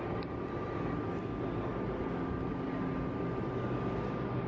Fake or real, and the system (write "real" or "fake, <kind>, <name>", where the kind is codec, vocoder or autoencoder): real